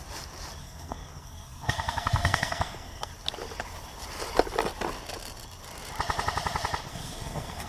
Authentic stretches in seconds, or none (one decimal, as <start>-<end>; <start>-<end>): 0.0-0.6; 3.1-6.9